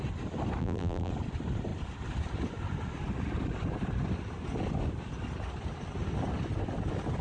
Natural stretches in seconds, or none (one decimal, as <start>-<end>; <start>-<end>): 0.0-0.6; 1.1-7.2